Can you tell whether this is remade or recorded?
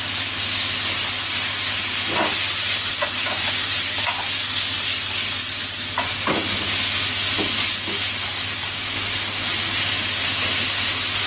recorded